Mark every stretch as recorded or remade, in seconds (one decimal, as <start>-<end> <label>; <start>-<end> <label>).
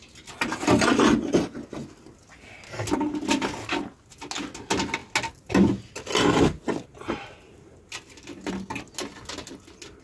0.0-10.0 recorded